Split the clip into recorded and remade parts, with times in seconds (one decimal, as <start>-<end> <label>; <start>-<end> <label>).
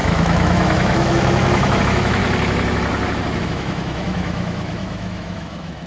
0.0-2.2 remade; 2.2-3.4 recorded; 3.4-5.9 remade